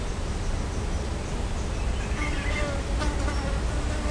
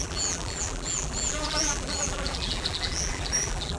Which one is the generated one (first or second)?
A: second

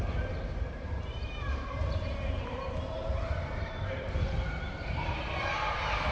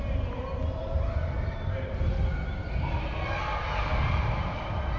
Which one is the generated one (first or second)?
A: first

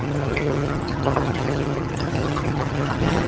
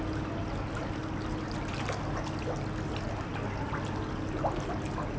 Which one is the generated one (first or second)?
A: first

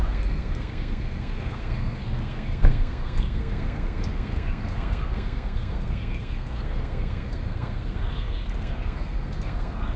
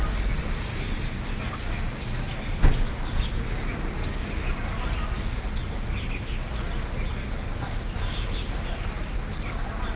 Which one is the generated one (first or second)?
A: first